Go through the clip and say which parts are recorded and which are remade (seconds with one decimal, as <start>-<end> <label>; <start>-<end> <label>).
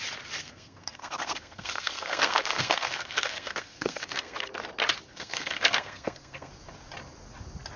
0.0-0.4 recorded; 0.4-4.4 remade; 4.4-5.1 recorded; 5.1-6.5 remade; 6.5-7.8 recorded